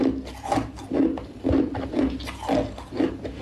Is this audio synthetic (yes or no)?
no